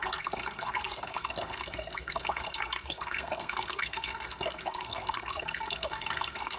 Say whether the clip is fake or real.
fake